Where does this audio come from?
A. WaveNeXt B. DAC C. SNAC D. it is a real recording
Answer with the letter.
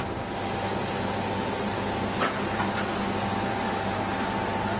D